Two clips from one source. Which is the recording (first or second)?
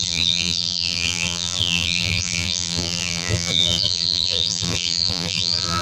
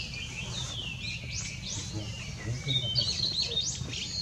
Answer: second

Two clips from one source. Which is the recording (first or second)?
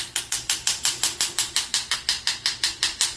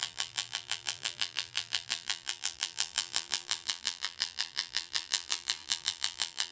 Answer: first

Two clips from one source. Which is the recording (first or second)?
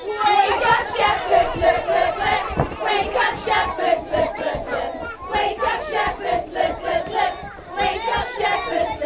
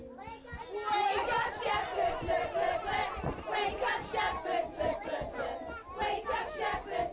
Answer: second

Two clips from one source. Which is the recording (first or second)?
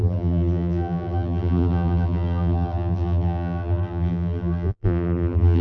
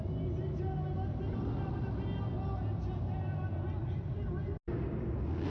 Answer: second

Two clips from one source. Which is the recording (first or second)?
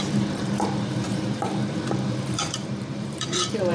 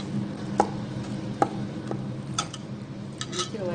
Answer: second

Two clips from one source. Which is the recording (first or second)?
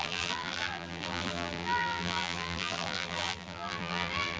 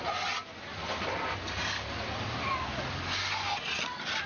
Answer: second